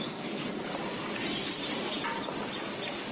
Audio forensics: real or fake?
real